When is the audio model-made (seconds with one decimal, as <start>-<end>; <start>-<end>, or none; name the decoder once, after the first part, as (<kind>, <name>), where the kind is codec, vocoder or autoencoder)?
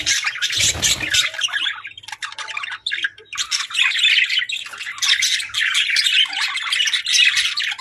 2.2-3.4 (vocoder, BigVGAN v2)